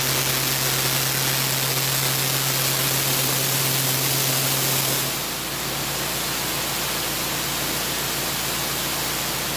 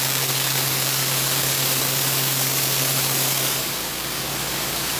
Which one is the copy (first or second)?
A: second